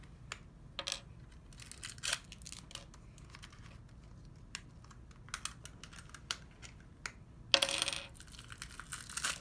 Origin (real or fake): real